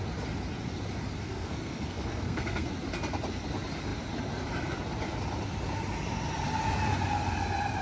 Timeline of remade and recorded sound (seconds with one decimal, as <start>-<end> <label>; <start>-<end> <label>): 0.0-1.2 recorded; 1.2-2.7 remade; 2.7-7.8 recorded